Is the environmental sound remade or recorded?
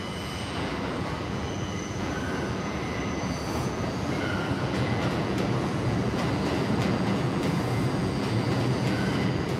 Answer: remade